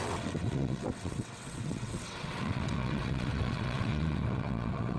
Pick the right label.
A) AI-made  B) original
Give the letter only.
A